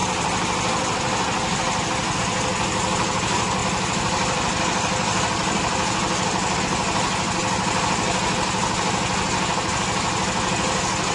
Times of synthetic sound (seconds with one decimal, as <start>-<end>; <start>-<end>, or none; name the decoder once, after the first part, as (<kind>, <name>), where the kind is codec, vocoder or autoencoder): none